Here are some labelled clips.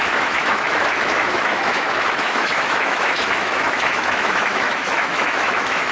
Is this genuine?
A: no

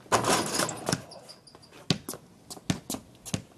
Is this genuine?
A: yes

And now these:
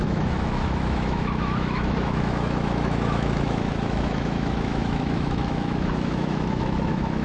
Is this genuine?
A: no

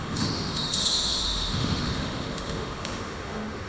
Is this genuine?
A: no